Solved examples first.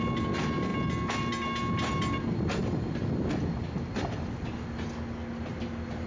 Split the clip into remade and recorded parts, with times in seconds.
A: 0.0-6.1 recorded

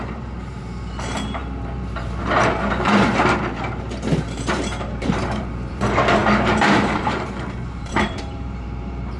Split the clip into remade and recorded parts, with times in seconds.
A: 0.0-9.2 remade

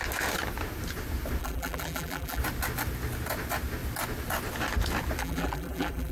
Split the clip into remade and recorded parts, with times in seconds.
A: 0.0-1.4 recorded; 1.4-2.4 remade; 2.4-5.2 recorded; 5.2-6.1 remade

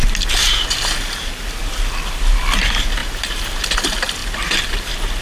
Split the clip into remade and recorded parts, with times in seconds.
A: 0.0-0.4 recorded; 0.4-1.8 remade; 1.8-3.0 recorded; 3.0-3.6 remade; 3.6-4.2 recorded; 4.2-4.7 remade; 4.7-5.2 recorded

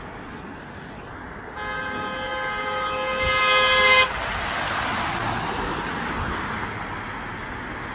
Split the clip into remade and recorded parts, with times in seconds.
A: 0.0-7.9 recorded

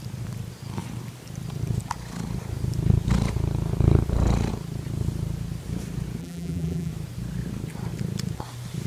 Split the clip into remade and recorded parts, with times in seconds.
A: 0.0-6.2 recorded; 6.2-6.9 remade; 6.9-8.9 recorded

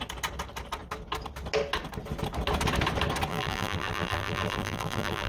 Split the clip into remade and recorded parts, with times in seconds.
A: 0.0-3.3 recorded; 3.3-5.3 remade